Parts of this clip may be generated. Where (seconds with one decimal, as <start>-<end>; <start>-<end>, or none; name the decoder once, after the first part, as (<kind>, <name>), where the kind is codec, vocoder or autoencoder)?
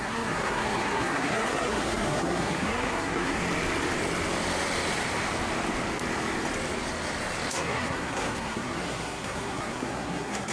0.0-3.4 (codec, SNAC); 7.5-10.5